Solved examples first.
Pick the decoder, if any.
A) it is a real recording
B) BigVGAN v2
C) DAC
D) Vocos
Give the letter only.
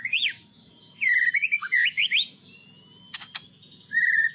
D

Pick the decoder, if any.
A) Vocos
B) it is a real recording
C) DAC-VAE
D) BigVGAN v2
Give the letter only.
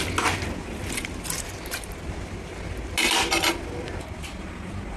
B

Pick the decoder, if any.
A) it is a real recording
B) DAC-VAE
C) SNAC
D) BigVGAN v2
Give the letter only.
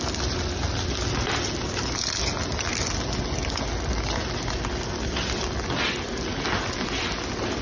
A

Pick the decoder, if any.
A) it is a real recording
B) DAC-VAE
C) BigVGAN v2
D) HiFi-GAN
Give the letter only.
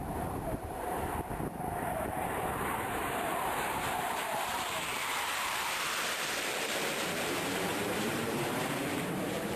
C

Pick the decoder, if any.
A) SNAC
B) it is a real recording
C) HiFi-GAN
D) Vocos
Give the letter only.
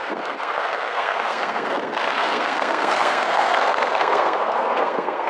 A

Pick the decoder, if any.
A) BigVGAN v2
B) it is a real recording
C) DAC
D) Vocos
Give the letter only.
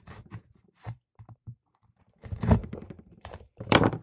A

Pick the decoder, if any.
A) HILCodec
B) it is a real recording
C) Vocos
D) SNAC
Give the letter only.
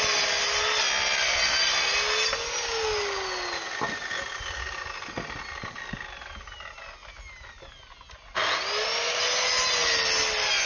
B